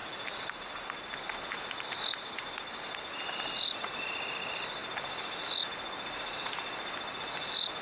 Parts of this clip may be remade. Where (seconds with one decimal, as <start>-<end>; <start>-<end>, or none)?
none